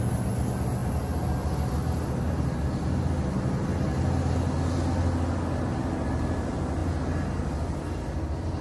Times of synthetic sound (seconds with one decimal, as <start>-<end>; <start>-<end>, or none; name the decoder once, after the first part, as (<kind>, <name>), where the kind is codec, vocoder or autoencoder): none

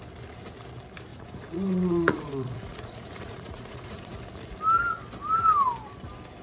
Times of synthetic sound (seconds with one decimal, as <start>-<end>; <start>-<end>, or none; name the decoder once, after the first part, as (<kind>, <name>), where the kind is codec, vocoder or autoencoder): 1.1-4.2 (vocoder, Vocos)